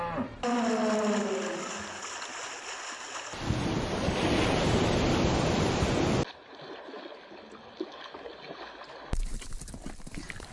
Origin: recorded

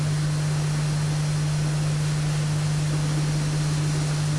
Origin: recorded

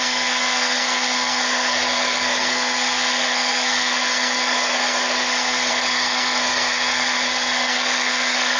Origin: remade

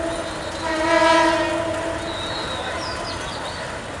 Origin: recorded